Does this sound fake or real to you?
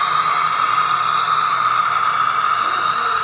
real